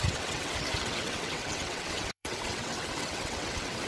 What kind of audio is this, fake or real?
fake